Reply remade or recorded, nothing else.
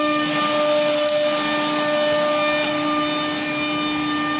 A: recorded